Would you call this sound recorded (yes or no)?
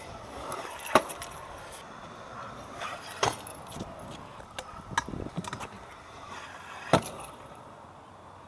yes